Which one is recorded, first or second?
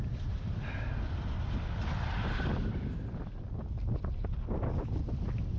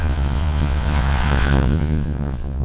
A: first